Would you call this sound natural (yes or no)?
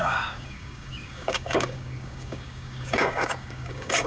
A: no